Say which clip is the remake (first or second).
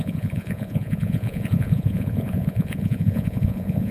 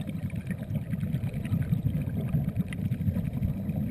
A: first